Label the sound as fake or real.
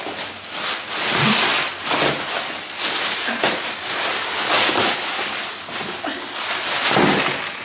real